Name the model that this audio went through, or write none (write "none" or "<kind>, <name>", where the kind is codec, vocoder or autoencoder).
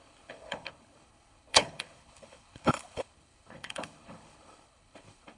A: codec, HILCodec